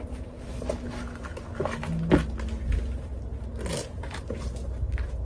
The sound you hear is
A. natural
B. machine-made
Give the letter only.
A